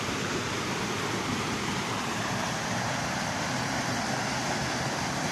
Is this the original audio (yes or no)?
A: yes